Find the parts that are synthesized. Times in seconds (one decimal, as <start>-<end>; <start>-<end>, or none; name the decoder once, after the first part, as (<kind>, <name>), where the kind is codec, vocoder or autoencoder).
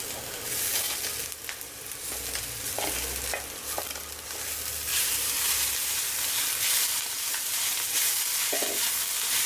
4.9-6.4 (vocoder, BigVGAN v2)